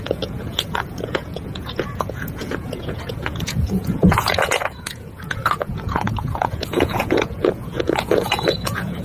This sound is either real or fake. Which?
fake